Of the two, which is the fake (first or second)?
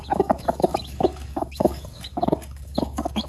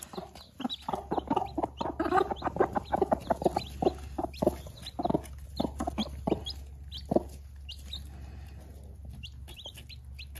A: first